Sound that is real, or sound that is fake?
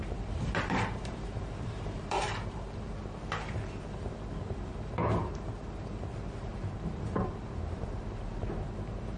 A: fake